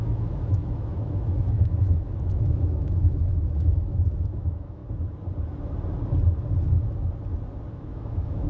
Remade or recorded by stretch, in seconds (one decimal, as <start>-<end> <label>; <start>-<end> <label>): 0.0-4.8 remade; 4.8-7.7 recorded; 7.7-8.5 remade